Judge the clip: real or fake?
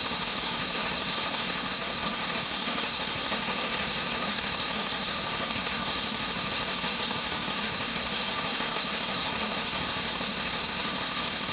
fake